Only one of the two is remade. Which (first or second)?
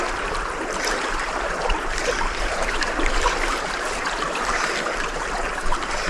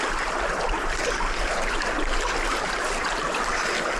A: first